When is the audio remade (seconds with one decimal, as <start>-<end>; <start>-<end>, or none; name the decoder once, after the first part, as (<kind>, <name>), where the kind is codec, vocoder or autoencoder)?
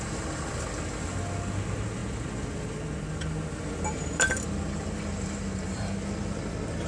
none